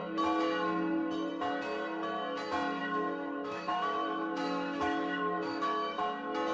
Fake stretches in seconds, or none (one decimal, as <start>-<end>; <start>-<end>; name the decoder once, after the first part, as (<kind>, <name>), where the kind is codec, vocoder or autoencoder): 2.8-6.0 (autoencoder, DAC-VAE)